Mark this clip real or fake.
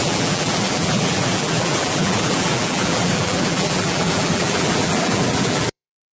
fake